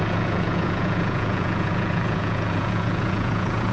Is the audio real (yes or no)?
no